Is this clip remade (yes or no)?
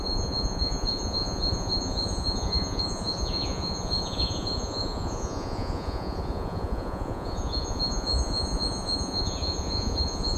yes